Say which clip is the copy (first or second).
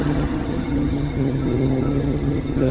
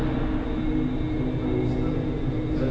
first